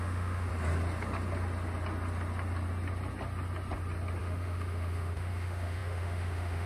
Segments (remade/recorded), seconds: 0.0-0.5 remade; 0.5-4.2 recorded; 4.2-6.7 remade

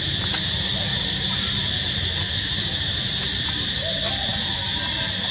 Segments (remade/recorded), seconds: 0.0-5.3 recorded

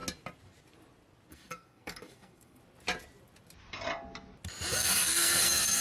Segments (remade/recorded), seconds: 0.0-1.3 recorded; 1.3-2.6 remade; 2.6-4.7 recorded; 4.7-5.8 remade

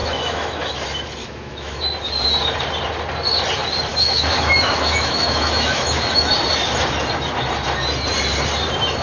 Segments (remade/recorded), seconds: 0.0-0.7 remade; 0.7-1.2 recorded; 1.2-1.8 remade; 1.8-3.9 recorded; 3.9-6.3 remade; 6.3-9.0 recorded

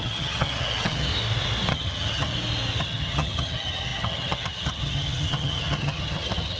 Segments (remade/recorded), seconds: 0.0-1.1 remade; 1.1-1.7 recorded; 1.7-2.3 remade; 2.3-2.8 recorded; 2.8-6.6 remade

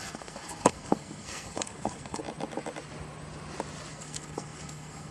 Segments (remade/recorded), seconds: 0.0-2.2 remade; 2.2-3.9 recorded; 3.9-5.1 remade